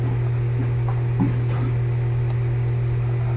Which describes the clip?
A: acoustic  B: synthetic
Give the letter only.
A